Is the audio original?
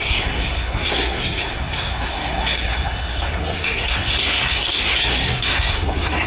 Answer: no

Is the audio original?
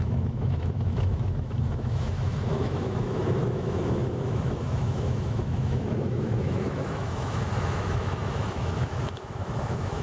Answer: no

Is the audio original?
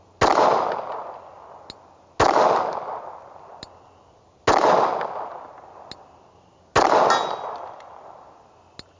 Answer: yes